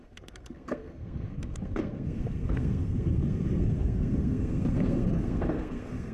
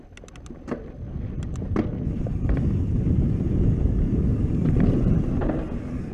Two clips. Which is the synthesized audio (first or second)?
first